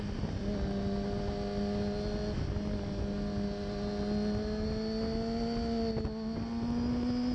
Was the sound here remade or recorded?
recorded